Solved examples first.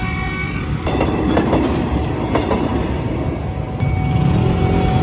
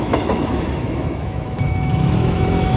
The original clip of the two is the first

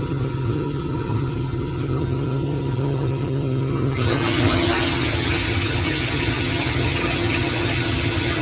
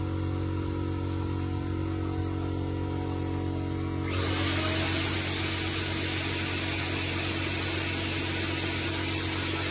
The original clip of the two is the second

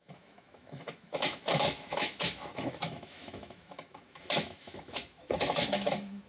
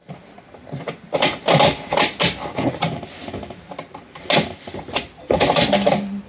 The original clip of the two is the second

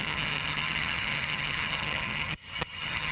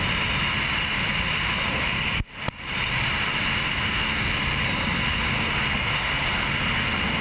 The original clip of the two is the second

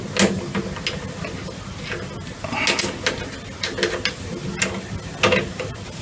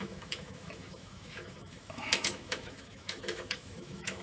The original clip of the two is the first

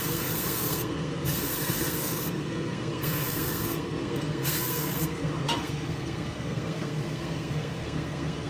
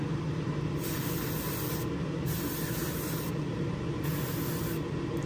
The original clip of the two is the second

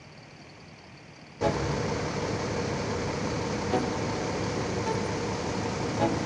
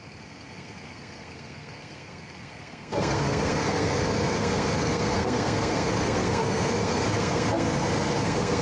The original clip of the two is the first